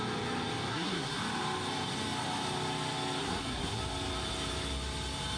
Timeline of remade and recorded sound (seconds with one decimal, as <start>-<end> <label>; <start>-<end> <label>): 0.0-0.7 recorded; 0.7-1.2 remade; 1.2-3.2 recorded; 3.2-3.8 remade; 3.8-5.4 recorded